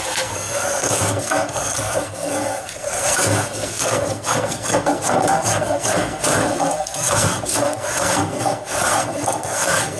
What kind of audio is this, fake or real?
fake